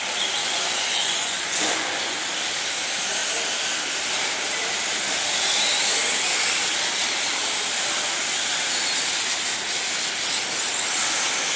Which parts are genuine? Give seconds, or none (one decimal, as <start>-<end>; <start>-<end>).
0.0-0.4; 2.2-11.6